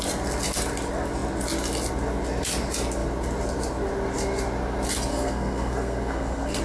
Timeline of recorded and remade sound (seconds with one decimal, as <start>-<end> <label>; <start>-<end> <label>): 0.0-5.1 recorded; 5.1-6.6 remade